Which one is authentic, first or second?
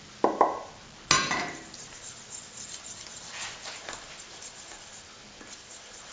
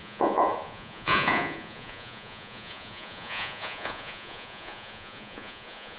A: first